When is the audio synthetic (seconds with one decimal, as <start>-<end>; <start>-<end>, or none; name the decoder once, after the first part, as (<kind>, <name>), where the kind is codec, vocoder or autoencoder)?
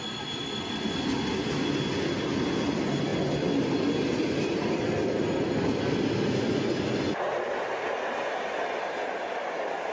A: none